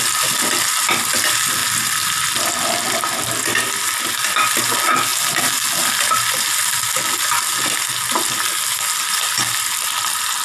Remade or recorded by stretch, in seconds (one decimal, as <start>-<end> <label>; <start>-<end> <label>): 0.0-1.6 recorded; 1.6-4.6 remade; 4.6-10.4 recorded